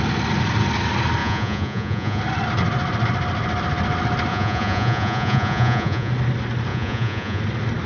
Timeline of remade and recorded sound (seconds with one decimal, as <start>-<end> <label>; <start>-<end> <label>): 0.0-1.2 recorded; 1.2-2.2 remade; 2.2-4.3 recorded; 4.3-6.1 remade; 6.1-6.7 recorded; 6.7-7.4 remade; 7.4-7.9 recorded